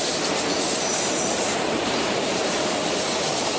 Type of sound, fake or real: fake